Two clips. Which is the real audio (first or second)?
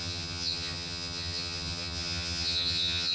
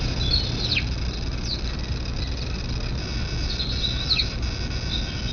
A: second